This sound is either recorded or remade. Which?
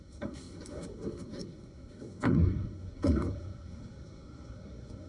remade